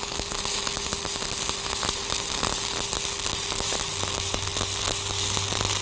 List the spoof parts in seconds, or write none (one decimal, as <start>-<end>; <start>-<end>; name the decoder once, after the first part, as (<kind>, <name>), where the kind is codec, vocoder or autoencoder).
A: none